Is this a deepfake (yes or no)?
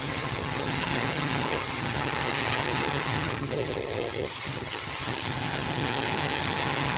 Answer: yes